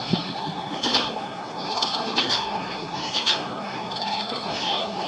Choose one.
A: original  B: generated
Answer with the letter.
B